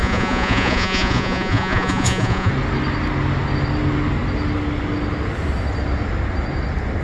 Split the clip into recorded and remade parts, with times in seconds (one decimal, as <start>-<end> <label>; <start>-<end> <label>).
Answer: 0.0-2.5 remade; 2.5-7.0 recorded